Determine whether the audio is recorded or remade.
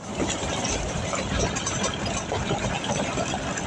recorded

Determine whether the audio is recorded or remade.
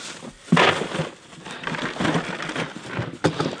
recorded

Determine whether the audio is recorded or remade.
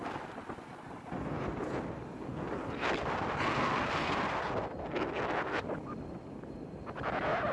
recorded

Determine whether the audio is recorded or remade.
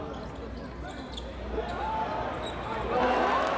recorded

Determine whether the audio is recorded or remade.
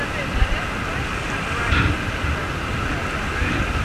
recorded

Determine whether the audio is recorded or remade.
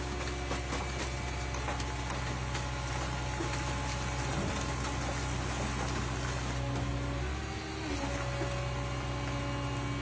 recorded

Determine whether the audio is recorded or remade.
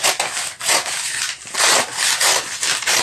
recorded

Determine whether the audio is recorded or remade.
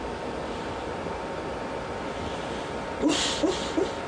recorded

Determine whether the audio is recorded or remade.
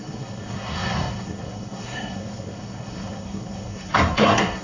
remade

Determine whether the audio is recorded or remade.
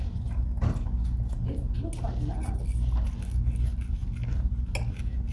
recorded